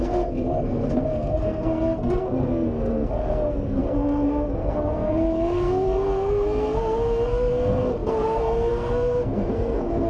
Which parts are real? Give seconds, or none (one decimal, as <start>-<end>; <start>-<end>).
none